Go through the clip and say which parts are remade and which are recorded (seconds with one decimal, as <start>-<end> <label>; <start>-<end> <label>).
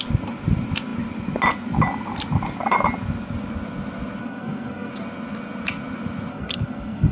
0.0-4.2 recorded; 4.2-4.9 remade; 4.9-6.3 recorded; 6.3-7.1 remade